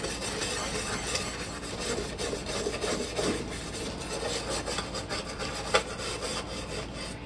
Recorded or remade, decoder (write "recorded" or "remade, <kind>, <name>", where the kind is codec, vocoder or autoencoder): recorded